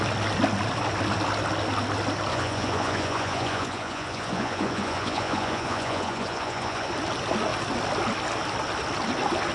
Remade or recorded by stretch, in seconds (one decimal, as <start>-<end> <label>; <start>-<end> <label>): 0.0-2.3 recorded; 2.3-6.9 remade; 6.9-9.5 recorded